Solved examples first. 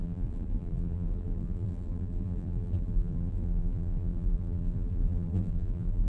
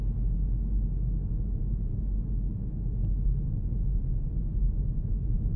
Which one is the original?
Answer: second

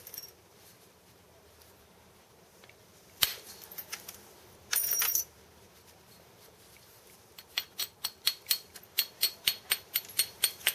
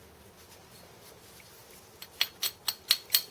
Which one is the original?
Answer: second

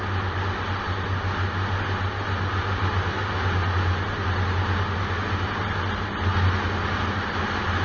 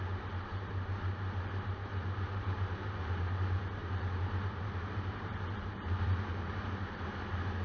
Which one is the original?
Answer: first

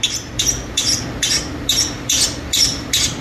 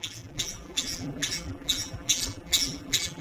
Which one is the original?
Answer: first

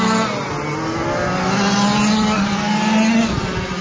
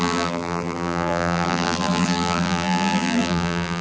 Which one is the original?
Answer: first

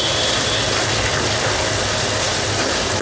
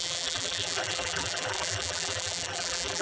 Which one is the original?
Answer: first